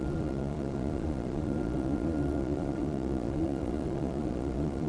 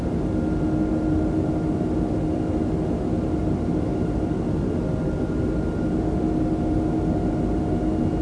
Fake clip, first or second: first